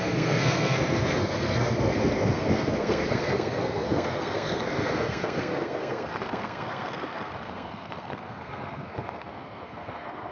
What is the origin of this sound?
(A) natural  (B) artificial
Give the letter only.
B